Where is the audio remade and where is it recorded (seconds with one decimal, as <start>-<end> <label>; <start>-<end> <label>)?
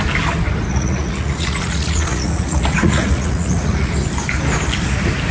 0.0-0.7 recorded; 0.7-3.9 remade; 3.9-5.3 recorded